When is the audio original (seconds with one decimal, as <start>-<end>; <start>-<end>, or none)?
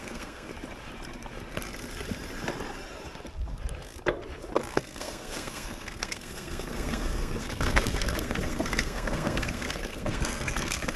0.5-4.7